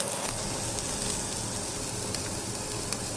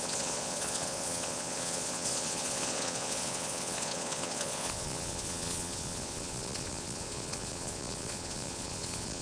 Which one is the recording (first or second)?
first